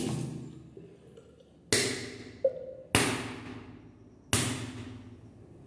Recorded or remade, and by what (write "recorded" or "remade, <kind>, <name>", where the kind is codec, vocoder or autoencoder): recorded